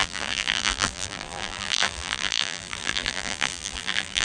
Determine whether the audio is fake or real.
fake